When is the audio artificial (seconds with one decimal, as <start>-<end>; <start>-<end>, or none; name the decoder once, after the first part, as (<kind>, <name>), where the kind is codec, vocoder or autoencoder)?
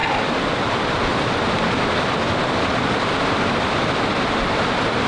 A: 0.0-0.6 (vocoder, BigVGAN v2)